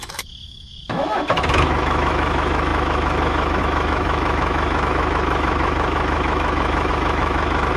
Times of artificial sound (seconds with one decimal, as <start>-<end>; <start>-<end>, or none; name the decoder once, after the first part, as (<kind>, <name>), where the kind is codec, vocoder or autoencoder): 0.0-7.8 (autoencoder, DAC-VAE)